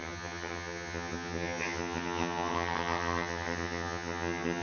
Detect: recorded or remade remade